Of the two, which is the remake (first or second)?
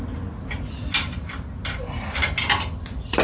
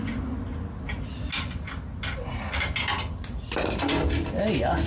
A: first